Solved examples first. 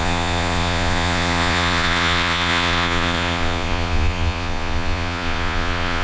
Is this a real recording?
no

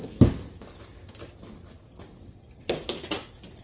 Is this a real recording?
yes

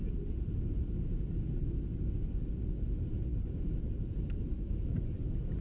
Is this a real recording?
yes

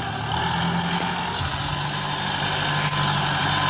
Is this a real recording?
yes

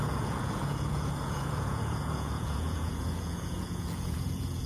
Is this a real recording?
no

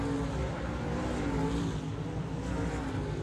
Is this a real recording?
yes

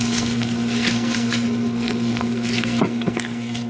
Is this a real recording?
no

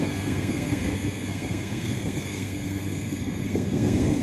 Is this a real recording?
no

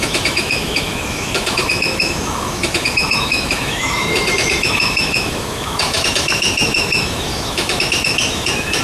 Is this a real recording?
no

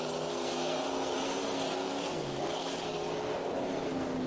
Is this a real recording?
no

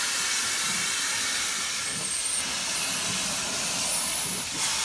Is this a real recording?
no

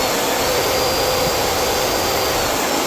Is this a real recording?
yes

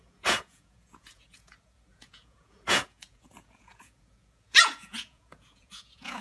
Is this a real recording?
no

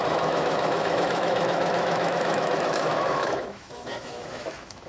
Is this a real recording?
no